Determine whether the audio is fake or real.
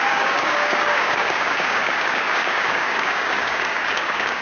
fake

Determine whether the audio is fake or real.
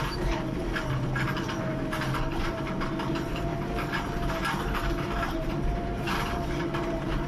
fake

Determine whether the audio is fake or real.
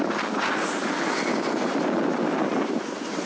real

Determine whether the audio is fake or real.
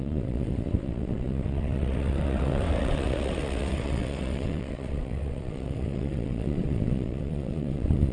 fake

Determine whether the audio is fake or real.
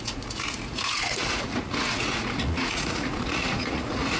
fake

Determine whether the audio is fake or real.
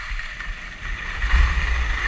real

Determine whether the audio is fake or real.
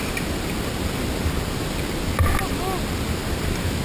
real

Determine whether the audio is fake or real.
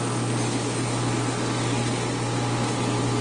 real